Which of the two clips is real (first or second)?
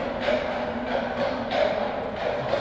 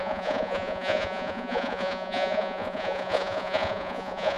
first